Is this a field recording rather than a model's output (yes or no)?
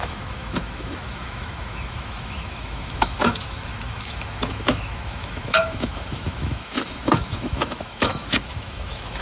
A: no